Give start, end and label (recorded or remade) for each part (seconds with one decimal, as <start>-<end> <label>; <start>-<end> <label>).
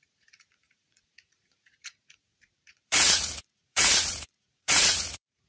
0.0-5.5 remade